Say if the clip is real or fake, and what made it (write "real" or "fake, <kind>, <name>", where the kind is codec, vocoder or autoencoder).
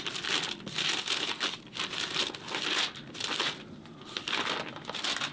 real